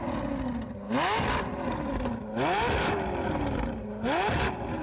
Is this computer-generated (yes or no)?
no